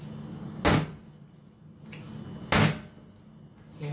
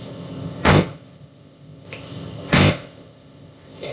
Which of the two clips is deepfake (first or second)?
second